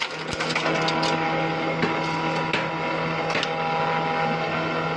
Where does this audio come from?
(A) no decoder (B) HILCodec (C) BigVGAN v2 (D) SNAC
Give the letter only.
A